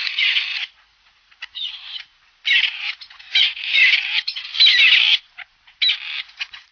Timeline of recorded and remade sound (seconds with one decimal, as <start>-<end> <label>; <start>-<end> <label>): 0.0-2.1 remade; 2.1-2.6 recorded; 2.6-3.8 remade; 3.8-6.2 recorded; 6.2-6.7 remade